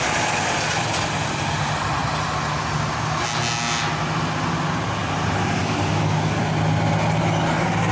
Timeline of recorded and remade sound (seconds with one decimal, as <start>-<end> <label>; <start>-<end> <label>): 0.0-5.6 recorded; 5.6-6.4 remade; 6.4-7.9 recorded